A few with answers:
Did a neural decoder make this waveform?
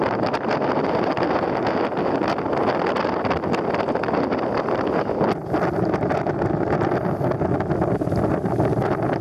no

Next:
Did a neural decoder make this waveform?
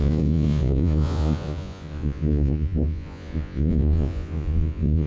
yes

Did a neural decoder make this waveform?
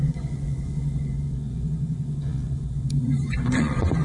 yes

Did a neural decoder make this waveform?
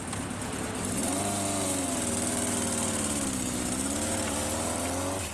no